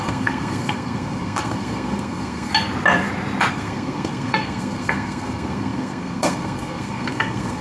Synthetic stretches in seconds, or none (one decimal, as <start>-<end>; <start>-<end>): 0.0-2.5; 3.5-7.6